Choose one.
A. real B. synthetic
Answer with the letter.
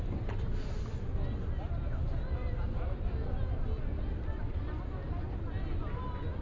A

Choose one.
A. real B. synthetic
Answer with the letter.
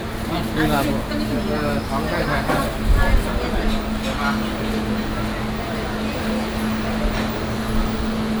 A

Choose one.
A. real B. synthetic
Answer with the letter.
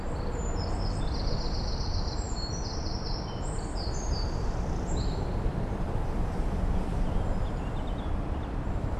B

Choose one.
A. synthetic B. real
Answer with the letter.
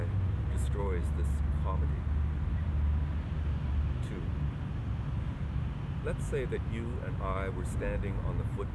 B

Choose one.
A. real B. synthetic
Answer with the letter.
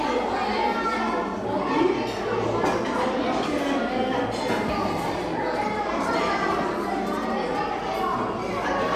A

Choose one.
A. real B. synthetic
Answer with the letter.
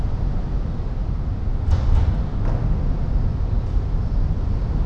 A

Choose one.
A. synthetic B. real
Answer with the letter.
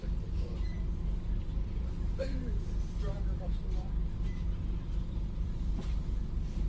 A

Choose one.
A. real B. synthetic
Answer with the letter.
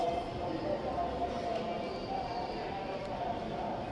A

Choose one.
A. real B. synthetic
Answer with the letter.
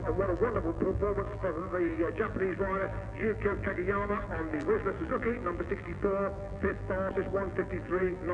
B